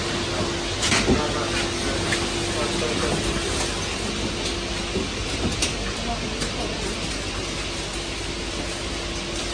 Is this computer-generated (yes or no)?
no